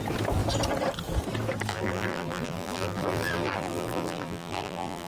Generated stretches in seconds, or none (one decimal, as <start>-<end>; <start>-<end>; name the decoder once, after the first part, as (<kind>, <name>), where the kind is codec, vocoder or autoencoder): 1.7-5.1 (vocoder, BigVGAN v2)